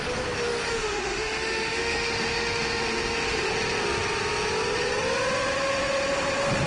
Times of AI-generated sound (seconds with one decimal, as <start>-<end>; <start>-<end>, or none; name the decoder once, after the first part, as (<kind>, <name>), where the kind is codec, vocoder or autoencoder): 0.7-3.5 (autoencoder, DAC-VAE)